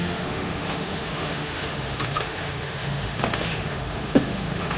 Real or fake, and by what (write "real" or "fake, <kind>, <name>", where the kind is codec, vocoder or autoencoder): fake, autoencoder, DAC-VAE